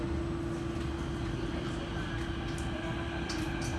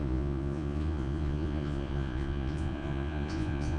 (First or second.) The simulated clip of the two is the second